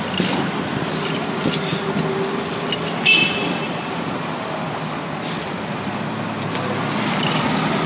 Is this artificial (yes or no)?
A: no